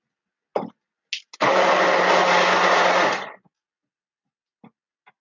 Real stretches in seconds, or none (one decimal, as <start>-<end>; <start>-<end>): 0.0-5.2